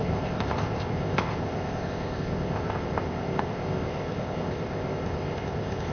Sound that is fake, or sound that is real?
fake